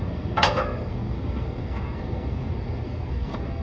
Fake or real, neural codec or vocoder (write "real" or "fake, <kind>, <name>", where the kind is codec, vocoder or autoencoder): fake, codec, SNAC